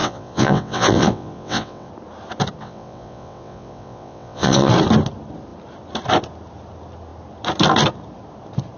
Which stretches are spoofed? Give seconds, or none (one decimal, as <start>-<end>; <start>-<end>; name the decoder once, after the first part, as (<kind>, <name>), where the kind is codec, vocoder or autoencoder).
0.0-1.9 (vocoder, WaveNeXt); 2.6-4.7